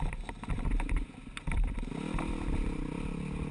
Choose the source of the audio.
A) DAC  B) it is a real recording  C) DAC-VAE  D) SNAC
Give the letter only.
B